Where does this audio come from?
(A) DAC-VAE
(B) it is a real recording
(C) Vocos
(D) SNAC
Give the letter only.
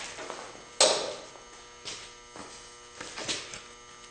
B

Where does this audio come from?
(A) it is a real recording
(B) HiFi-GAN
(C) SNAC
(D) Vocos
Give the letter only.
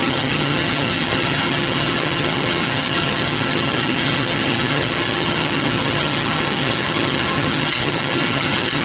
B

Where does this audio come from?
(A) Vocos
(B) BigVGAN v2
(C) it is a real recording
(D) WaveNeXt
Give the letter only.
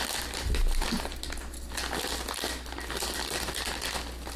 C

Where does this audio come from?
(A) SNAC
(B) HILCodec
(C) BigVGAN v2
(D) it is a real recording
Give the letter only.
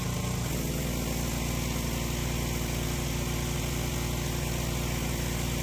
D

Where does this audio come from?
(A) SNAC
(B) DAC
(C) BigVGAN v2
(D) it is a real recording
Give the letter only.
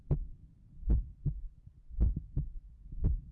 D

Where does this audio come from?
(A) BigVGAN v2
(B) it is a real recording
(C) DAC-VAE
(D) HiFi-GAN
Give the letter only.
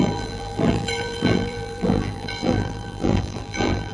A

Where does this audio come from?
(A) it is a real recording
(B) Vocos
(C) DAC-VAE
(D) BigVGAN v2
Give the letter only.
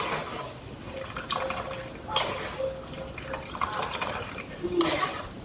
A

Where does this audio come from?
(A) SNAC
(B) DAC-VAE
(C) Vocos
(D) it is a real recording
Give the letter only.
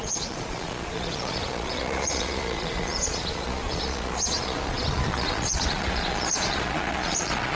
C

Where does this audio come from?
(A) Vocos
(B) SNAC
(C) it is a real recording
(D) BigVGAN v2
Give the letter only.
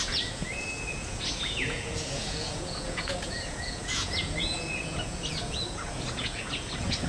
A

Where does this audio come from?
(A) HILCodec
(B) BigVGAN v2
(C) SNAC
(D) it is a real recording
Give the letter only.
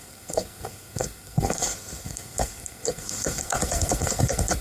C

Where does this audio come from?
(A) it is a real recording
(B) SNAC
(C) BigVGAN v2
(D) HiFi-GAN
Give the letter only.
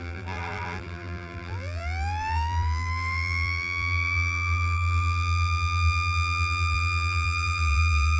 C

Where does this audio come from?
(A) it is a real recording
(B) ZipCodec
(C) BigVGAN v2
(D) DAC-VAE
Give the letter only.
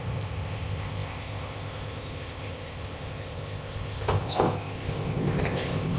B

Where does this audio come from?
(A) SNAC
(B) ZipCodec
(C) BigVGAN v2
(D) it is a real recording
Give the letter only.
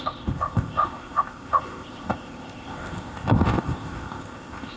B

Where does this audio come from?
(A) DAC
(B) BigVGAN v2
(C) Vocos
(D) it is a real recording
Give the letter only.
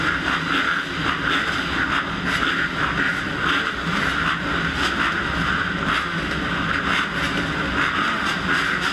D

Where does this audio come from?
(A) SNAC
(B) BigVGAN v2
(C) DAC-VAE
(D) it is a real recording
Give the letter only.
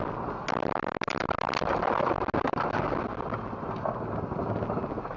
D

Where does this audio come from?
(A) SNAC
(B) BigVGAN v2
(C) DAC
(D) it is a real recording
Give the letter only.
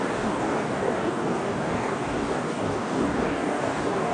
C